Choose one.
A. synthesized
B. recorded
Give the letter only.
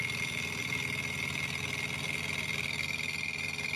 B